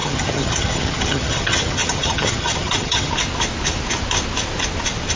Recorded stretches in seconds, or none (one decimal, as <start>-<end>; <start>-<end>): 3.1-5.2